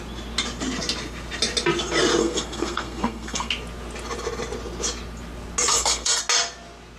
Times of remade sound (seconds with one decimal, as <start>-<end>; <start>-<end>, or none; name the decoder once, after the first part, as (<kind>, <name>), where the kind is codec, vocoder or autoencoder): 2.2-3.5 (codec, SNAC); 5.7-6.2